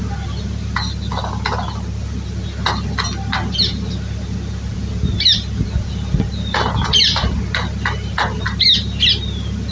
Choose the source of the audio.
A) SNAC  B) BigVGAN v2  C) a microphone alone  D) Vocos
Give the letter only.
C